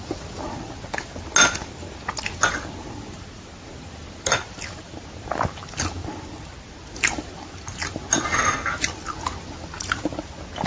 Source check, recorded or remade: recorded